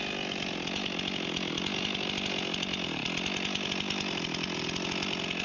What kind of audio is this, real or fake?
real